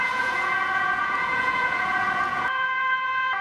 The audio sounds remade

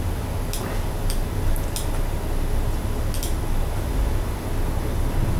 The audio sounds recorded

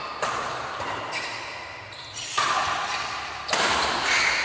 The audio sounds recorded